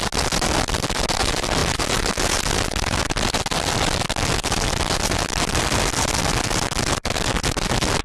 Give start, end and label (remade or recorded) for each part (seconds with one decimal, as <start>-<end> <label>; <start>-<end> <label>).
0.0-8.0 recorded